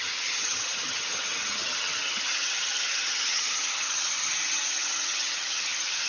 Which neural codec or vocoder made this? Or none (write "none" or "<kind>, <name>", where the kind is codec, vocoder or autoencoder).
vocoder, HiFi-GAN